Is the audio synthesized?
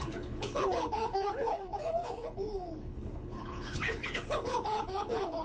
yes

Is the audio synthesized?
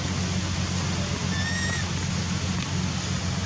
no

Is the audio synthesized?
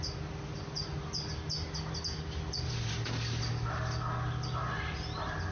no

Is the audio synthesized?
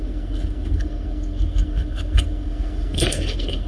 yes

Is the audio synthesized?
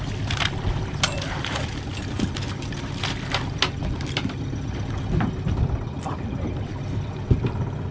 no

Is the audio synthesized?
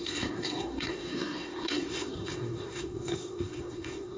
yes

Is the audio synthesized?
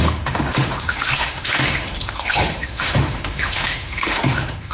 yes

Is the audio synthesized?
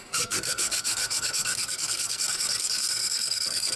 yes